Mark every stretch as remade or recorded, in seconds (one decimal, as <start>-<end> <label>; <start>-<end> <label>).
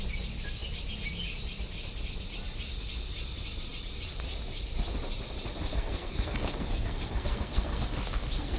0.0-5.7 recorded; 5.7-8.6 remade